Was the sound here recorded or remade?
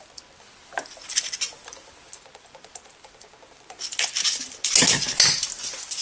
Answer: recorded